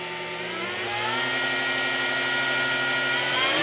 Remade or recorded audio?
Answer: recorded